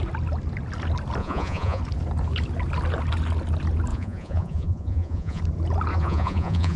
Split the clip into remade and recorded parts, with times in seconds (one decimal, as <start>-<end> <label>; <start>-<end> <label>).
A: 0.0-1.2 recorded; 1.2-1.8 remade; 1.8-3.9 recorded; 3.9-5.4 remade; 5.4-5.9 recorded; 5.9-6.8 remade